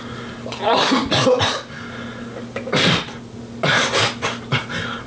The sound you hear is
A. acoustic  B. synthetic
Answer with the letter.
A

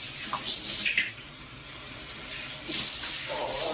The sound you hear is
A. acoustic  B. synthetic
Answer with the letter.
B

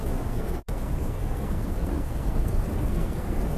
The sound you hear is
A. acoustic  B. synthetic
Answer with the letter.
B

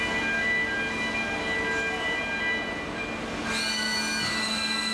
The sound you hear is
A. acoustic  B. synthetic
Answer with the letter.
A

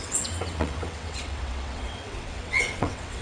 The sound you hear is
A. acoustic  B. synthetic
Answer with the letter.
B